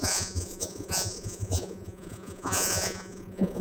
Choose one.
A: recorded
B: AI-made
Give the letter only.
B